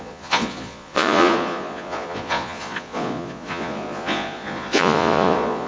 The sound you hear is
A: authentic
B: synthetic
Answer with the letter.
B